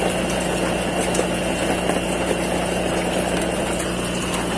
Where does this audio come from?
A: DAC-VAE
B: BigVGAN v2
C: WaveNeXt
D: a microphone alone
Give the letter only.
D